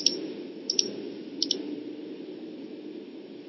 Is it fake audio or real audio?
real